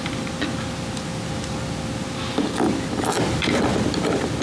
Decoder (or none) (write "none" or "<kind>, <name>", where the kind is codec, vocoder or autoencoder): none